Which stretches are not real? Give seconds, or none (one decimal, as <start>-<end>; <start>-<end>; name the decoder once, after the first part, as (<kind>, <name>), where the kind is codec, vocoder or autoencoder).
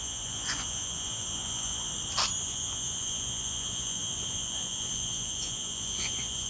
0.0-1.9 (vocoder, Vocos); 2.4-6.5